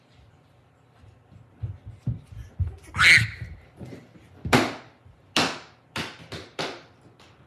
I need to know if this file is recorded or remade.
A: recorded